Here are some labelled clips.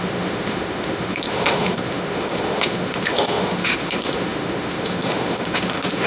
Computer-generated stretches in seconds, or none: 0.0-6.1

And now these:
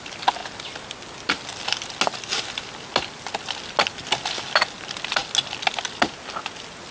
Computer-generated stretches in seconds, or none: none